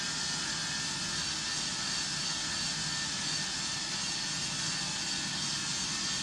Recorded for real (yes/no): yes